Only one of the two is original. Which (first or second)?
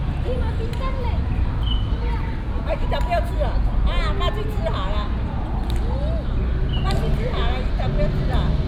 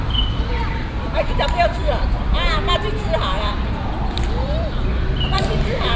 first